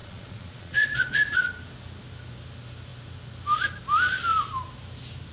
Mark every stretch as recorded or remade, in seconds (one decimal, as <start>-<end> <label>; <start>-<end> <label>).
0.0-1.4 remade; 1.4-5.3 recorded